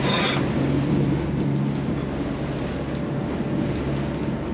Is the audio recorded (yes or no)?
yes